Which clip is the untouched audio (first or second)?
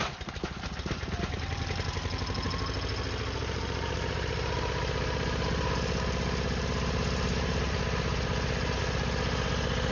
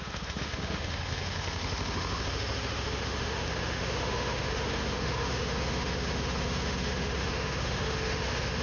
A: first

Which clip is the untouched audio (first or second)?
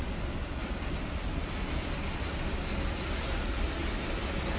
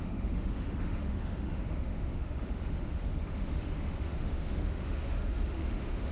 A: first